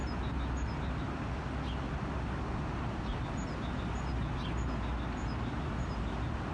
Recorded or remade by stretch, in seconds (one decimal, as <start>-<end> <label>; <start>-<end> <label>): 0.0-6.5 recorded